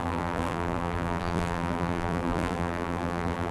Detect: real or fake fake